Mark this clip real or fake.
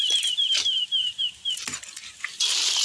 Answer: fake